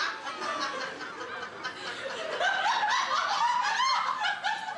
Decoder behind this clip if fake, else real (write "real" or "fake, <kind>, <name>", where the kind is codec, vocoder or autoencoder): real